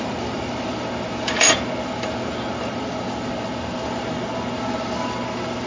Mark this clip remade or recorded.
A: remade